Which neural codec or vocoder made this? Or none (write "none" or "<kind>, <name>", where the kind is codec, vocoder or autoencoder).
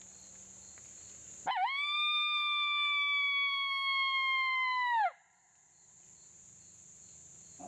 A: none